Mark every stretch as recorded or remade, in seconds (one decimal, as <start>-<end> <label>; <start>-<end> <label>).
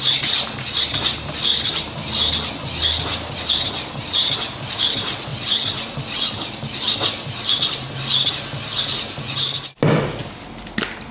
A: 0.0-11.1 recorded